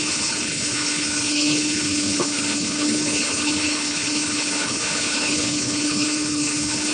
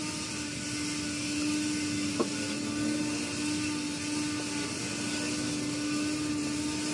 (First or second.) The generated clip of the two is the first